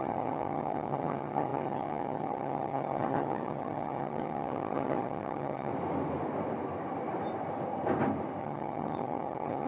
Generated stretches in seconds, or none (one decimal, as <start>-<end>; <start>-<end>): 0.0-5.7; 8.4-9.7